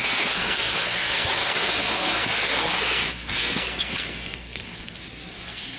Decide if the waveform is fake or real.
fake